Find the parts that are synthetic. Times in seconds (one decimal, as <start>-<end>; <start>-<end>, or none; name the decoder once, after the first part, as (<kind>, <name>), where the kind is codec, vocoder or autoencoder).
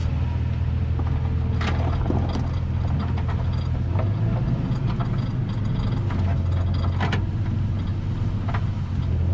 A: none